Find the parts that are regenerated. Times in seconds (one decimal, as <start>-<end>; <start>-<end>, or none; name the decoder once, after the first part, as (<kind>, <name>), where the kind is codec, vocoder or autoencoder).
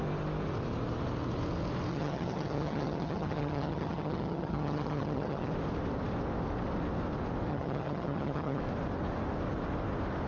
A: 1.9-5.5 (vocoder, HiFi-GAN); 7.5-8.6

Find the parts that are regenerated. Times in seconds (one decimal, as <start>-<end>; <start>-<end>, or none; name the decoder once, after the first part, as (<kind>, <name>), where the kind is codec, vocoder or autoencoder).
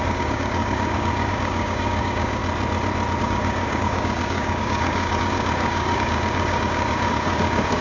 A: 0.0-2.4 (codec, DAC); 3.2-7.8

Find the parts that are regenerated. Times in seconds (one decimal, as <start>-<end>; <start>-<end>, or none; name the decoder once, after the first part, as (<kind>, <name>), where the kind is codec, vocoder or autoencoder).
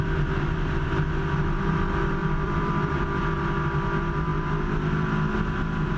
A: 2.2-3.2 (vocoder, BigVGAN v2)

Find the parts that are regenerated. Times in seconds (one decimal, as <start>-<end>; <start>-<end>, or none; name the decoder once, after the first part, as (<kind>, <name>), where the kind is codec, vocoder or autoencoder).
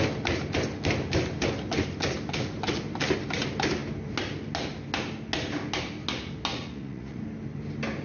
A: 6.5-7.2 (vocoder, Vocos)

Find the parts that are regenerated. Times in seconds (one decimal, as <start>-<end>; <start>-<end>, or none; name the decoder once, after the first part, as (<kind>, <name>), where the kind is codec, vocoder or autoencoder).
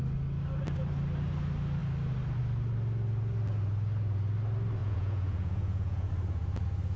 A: 4.8-6.1 (vocoder, Vocos)